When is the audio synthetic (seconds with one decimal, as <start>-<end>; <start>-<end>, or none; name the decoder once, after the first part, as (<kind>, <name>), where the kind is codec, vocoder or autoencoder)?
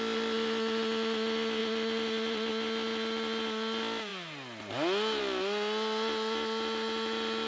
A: 1.6-2.5 (vocoder, BigVGAN v2)